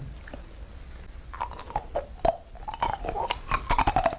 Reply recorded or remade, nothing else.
recorded